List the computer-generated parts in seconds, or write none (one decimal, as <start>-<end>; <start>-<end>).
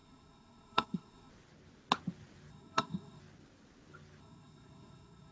0.0-1.3; 2.5-3.2; 4.2-5.3